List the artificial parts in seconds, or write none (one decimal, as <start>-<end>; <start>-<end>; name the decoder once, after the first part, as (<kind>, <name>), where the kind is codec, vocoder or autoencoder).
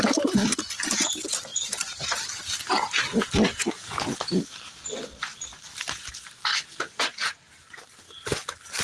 1.5-2.2 (vocoder, BigVGAN v2); 3.5-4.8